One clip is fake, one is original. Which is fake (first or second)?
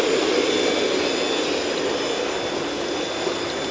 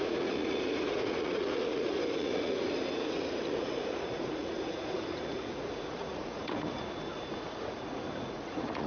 second